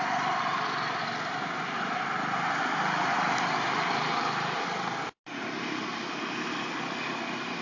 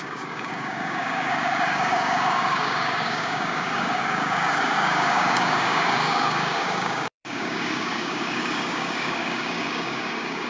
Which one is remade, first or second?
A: second